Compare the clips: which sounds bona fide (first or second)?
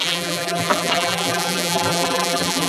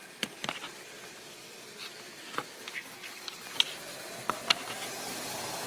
second